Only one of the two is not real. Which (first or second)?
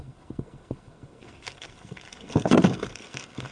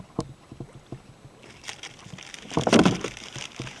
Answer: first